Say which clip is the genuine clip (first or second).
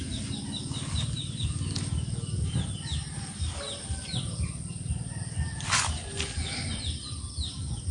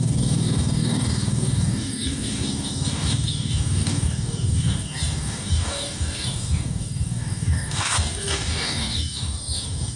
first